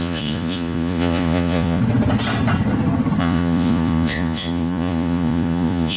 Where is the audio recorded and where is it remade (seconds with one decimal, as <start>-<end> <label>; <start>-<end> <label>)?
0.0-1.8 remade; 1.8-3.2 recorded; 3.2-6.0 remade